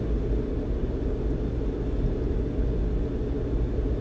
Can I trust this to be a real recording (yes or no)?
yes